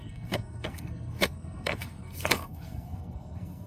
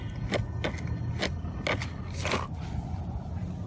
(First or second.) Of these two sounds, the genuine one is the second